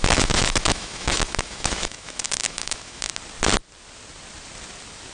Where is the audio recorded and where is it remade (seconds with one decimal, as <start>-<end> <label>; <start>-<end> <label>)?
0.0-3.1 remade; 3.1-5.1 recorded